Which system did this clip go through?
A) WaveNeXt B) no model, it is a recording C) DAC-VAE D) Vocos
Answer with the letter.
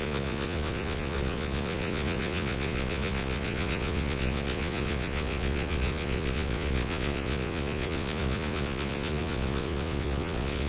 D